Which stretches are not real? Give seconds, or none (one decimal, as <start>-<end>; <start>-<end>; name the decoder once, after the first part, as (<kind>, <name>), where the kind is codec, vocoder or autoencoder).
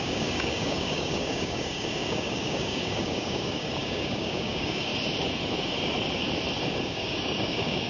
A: 0.0-4.9 (codec, DAC); 6.8-7.9